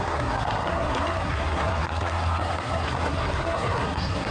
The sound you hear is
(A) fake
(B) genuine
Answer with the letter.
A